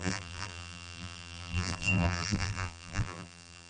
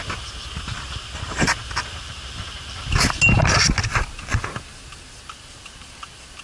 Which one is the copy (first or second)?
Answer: first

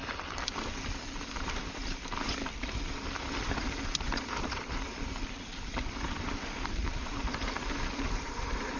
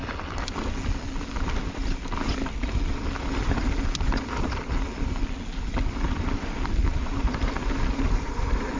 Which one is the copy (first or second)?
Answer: first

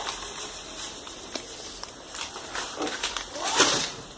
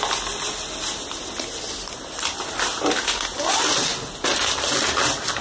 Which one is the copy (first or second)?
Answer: first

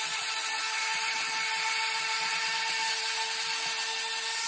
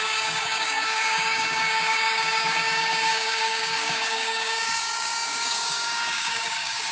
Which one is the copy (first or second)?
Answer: second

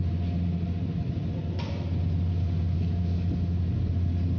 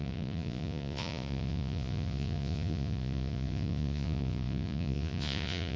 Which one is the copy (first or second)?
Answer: second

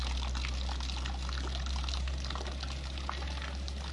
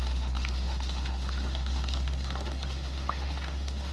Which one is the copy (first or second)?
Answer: second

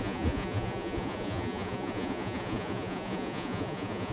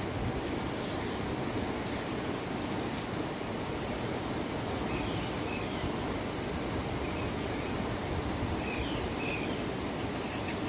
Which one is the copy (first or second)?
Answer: first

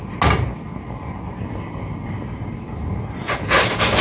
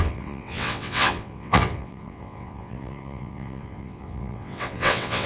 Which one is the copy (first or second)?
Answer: second